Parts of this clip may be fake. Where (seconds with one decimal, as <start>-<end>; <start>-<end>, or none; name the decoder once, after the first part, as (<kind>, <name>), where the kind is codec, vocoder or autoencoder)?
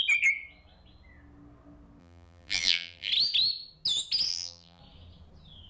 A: 2.0-3.1 (vocoder, BigVGAN v2); 4.3-4.8